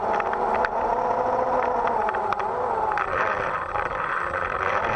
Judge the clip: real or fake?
real